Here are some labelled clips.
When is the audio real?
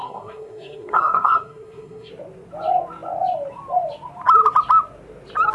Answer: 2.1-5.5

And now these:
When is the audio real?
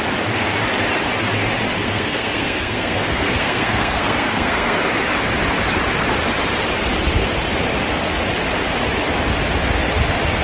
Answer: 0.0-1.8; 4.8-10.4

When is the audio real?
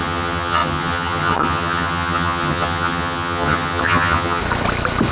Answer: 4.4-5.1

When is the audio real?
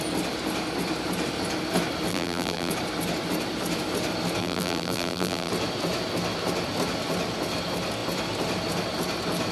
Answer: 0.0-2.1; 2.7-4.4; 5.5-9.5